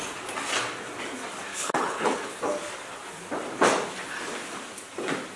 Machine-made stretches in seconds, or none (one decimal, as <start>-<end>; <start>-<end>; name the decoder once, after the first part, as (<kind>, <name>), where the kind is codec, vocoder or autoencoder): 1.5-2.3 (codec, HILCodec)